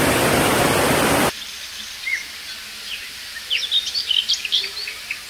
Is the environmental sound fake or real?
fake